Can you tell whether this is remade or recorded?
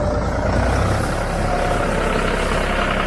recorded